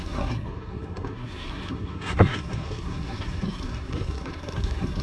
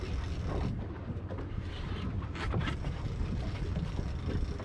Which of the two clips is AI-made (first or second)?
first